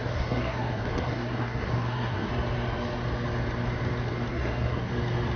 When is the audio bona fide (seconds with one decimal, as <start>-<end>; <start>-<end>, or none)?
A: 2.3-4.3; 4.9-5.4